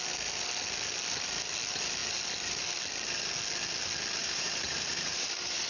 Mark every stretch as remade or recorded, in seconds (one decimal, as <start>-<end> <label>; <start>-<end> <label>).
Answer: 0.0-4.2 recorded; 4.2-5.7 remade